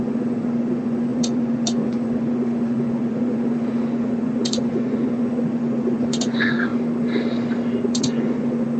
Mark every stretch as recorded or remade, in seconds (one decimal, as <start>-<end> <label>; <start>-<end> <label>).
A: 0.0-6.7 remade; 6.7-7.9 recorded; 7.9-8.8 remade